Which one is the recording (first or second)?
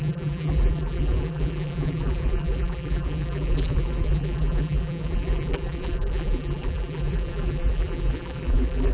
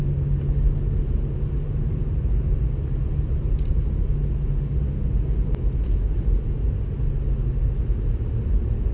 second